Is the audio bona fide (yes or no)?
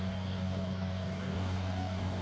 no